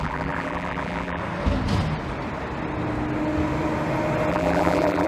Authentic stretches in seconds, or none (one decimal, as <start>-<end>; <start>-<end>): 1.2-4.3